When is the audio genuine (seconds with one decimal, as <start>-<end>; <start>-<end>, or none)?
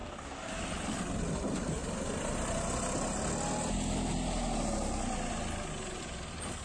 0.6-6.6